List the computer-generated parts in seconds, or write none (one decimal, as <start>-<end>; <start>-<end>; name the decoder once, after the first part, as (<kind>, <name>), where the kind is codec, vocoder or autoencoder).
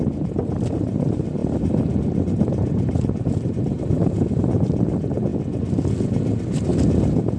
0.0-5.3 (vocoder, BigVGAN v2); 6.0-6.7